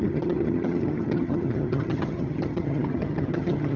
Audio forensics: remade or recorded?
remade